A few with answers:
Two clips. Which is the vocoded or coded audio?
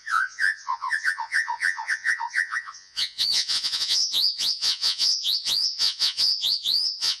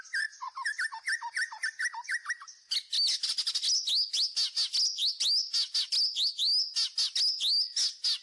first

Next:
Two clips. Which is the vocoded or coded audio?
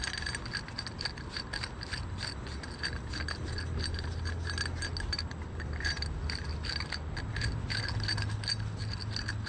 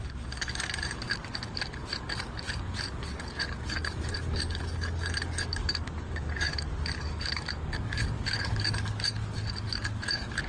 second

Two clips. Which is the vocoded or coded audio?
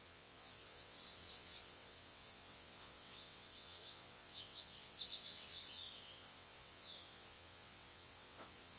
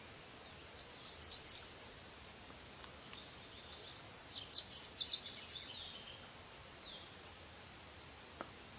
first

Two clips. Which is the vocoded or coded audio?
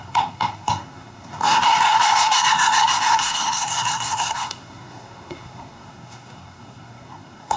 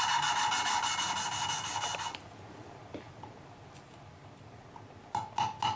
first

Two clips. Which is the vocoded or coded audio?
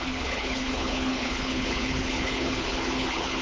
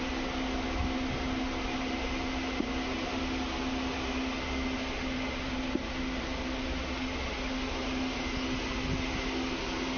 first